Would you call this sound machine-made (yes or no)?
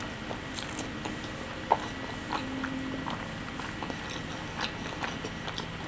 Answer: no